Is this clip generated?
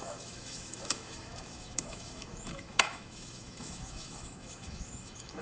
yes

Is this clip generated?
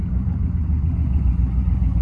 yes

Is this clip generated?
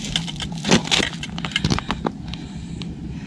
no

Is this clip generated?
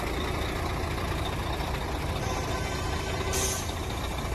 no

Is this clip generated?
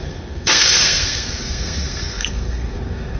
yes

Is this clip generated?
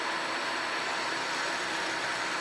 yes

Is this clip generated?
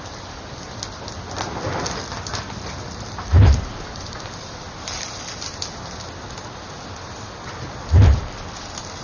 no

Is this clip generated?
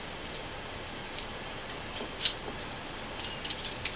no